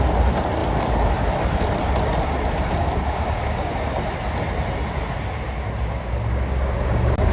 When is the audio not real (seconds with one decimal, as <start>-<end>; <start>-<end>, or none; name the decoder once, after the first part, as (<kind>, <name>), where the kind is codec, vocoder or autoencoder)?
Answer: 2.8-3.7 (codec, DAC); 6.1-7.3